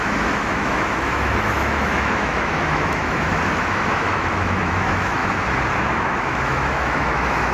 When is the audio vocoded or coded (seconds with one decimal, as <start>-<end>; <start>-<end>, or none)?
0.0-5.2; 5.8-7.5